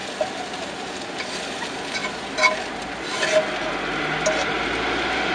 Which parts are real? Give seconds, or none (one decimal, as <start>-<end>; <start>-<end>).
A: 0.0-5.3